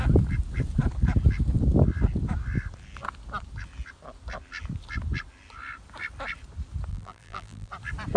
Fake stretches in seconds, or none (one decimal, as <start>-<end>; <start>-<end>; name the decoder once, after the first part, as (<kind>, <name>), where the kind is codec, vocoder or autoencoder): 6.9-7.7 (vocoder, BigVGAN v2)